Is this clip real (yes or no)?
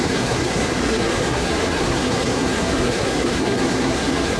no